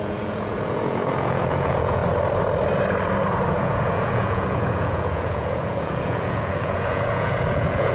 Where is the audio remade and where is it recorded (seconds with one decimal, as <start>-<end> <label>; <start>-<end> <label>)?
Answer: 0.0-2.0 remade; 2.0-3.5 recorded; 3.5-7.9 remade